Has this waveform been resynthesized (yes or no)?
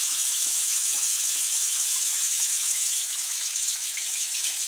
yes